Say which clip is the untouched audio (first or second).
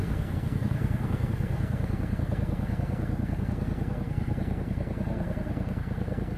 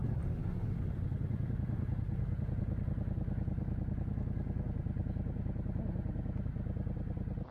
second